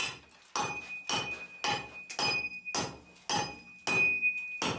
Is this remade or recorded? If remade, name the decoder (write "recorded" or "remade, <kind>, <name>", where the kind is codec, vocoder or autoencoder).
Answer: recorded